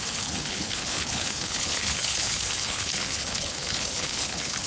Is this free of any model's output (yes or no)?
no